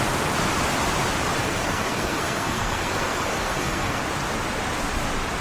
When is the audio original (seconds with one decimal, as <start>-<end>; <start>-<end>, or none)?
0.0-1.4; 4.0-5.4